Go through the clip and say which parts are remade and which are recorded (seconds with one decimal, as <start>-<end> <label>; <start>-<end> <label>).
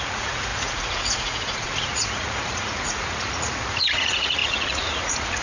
0.0-5.4 remade